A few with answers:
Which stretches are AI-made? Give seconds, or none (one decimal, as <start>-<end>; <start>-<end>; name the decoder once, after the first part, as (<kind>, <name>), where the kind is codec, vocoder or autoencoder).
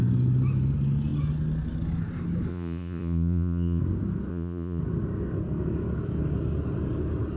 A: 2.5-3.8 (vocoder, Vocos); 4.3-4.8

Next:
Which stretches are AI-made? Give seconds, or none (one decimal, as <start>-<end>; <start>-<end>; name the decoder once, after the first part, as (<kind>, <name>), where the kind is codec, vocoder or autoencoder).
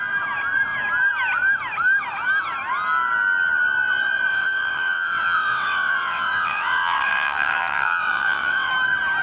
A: 4.3-8.7 (vocoder, WaveNeXt)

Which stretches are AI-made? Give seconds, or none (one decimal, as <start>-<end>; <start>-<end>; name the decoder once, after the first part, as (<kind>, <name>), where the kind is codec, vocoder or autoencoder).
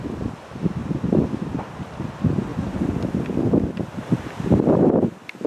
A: none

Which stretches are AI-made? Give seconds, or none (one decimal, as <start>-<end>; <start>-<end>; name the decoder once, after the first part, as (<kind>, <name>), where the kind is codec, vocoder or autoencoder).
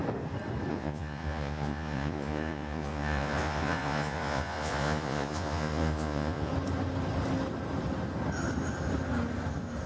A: 0.7-6.5 (vocoder, Vocos)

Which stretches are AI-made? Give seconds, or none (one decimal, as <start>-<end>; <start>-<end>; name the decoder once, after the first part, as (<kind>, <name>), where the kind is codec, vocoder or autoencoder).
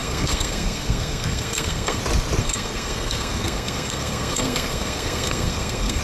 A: 0.0-2.0 (codec, SNAC); 2.4-6.0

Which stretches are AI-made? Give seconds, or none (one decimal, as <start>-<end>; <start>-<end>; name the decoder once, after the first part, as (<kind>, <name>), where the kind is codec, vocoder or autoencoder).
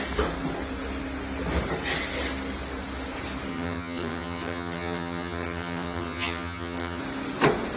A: 3.5-7.0 (vocoder, HiFi-GAN)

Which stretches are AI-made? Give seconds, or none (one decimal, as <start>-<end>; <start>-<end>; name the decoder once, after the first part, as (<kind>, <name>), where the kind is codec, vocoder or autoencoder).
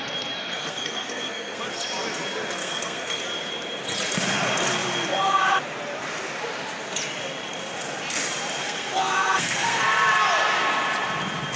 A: 0.4-1.6 (codec, SNAC); 2.6-3.2; 8.6-9.8